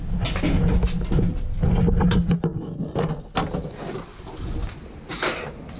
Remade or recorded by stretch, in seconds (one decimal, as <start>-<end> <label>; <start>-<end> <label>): 0.0-5.8 recorded